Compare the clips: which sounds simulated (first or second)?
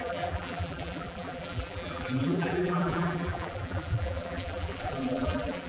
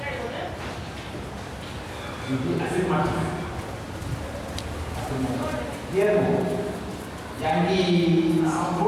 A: first